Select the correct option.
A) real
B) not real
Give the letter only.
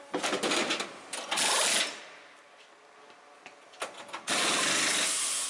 A